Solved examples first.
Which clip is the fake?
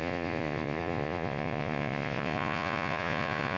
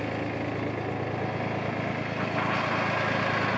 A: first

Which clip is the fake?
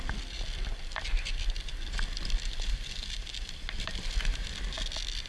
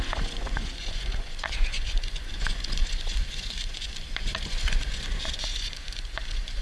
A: second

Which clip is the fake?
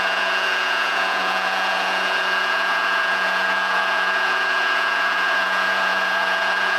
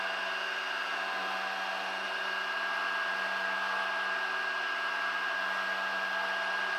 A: first